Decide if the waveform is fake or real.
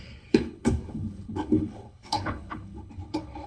fake